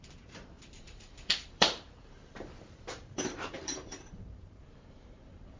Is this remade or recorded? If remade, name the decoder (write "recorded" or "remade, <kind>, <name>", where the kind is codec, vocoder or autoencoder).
remade, vocoder, BigVGAN v2